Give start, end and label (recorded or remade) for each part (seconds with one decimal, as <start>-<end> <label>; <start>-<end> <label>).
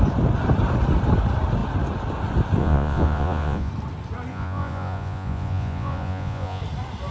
0.0-2.6 recorded; 2.6-3.7 remade; 3.7-4.3 recorded; 4.3-6.6 remade; 6.6-7.1 recorded